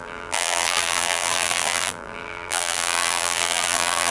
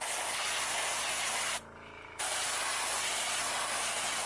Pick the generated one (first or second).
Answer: first